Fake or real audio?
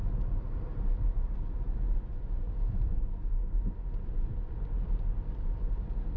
real